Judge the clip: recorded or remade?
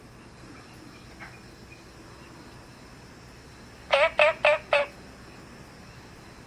recorded